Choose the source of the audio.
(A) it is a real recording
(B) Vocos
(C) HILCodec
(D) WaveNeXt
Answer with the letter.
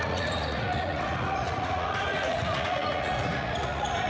B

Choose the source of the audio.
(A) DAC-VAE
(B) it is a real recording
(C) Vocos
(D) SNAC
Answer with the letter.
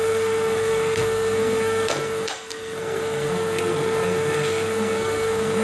D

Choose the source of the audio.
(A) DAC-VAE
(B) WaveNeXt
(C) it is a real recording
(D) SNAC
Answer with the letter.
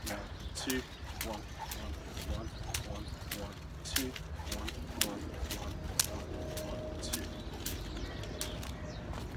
C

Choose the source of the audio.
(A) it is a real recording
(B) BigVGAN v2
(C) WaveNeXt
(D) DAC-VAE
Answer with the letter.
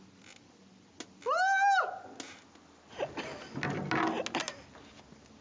A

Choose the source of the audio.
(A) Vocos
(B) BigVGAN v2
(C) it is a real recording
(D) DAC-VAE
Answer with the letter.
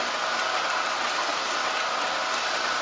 C